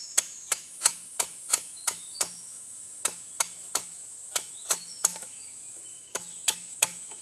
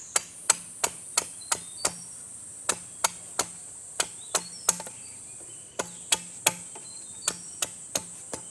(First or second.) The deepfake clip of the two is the first